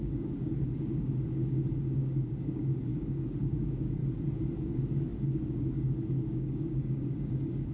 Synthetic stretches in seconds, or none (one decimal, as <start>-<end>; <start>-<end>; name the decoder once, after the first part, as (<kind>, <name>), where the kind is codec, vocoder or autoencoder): 0.0-4.0 (codec, DAC); 4.6-7.7